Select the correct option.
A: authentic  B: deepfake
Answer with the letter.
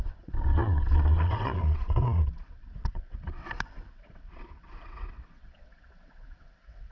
B